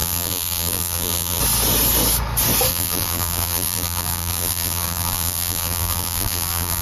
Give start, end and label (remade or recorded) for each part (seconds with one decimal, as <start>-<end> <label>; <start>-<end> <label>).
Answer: 0.0-1.4 remade; 1.4-2.7 recorded; 2.7-6.8 remade

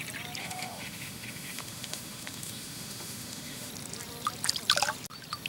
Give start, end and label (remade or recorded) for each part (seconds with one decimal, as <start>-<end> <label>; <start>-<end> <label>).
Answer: 0.0-0.4 recorded; 0.4-3.7 remade; 3.7-5.5 recorded

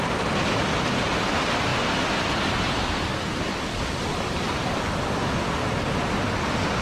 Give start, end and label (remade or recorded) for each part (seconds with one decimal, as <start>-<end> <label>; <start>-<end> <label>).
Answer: 0.0-6.8 recorded

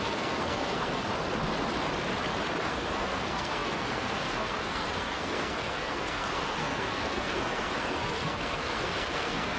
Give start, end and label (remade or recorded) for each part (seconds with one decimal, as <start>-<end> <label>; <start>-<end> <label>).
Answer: 0.0-1.1 remade; 1.1-2.6 recorded; 2.6-9.6 remade

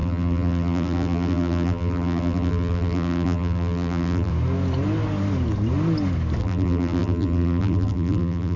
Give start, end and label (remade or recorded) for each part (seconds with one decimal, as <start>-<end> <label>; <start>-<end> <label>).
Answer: 0.0-4.3 remade; 4.3-6.4 recorded; 6.4-8.6 remade

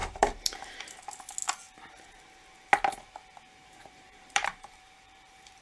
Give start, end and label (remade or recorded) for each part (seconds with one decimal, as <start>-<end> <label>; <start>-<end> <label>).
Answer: 0.0-0.8 remade; 0.8-3.6 recorded; 3.6-5.6 remade

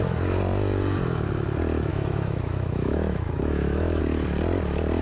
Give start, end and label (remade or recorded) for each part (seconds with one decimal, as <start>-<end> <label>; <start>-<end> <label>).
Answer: 0.0-1.9 recorded; 1.9-4.0 remade; 4.0-5.0 recorded

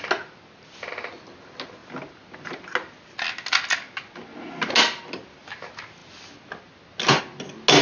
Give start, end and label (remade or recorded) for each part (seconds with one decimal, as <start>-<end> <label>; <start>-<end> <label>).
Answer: 0.0-7.8 recorded